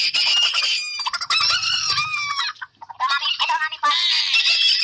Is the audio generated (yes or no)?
no